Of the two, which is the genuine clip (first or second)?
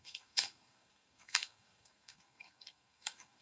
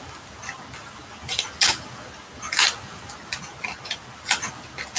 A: second